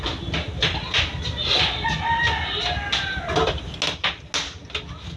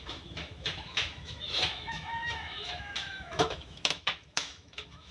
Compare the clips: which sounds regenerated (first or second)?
second